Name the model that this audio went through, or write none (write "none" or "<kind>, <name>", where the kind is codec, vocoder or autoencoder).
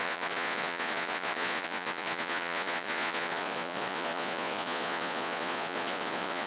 vocoder, Vocos